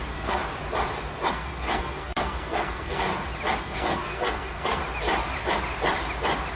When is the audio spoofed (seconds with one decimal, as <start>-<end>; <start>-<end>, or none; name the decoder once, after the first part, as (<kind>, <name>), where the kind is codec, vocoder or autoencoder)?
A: 0.0-0.4 (codec, SNAC); 1.3-3.1; 3.6-4.8